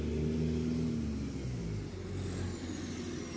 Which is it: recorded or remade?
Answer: recorded